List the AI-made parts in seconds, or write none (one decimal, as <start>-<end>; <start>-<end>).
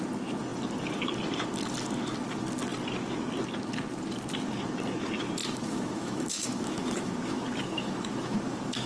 5.4-8.9